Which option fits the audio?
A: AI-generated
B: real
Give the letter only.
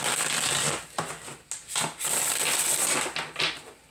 B